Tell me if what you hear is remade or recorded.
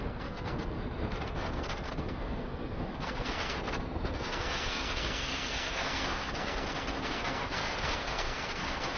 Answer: remade